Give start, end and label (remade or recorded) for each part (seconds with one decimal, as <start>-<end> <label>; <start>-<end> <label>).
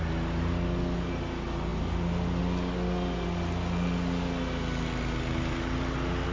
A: 0.0-6.3 recorded